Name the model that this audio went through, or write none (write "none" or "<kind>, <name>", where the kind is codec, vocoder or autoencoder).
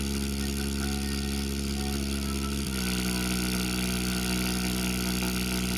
none